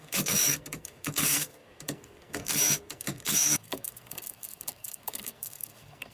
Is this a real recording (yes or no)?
no